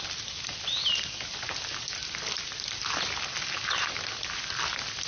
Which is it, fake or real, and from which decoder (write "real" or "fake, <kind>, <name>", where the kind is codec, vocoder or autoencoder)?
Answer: real